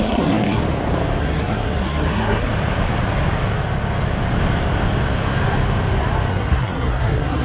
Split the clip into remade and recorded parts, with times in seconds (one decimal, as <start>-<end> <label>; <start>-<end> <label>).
0.0-0.6 remade; 0.6-1.2 recorded; 1.2-2.5 remade; 2.5-6.3 recorded; 6.3-7.4 remade